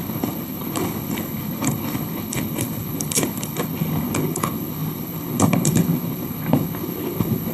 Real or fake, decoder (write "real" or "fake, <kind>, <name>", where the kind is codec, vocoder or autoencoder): fake, codec, HILCodec